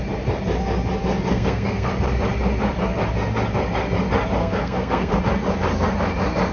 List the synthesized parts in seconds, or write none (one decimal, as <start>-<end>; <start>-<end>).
1.3-1.9; 4.4-5.2